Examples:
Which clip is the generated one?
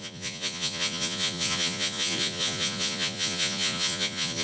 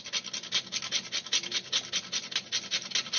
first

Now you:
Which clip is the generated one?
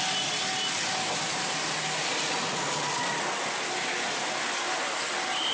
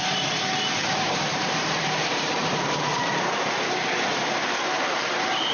second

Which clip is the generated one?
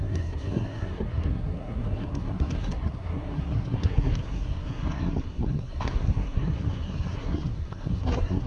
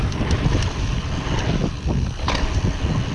first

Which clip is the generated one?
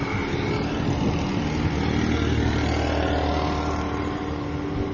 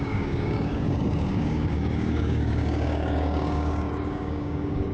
second